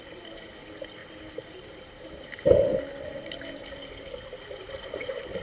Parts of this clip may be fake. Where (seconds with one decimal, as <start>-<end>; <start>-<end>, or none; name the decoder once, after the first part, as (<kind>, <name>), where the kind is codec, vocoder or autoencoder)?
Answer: none